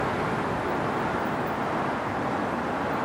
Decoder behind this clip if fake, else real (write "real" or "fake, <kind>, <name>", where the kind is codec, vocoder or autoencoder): real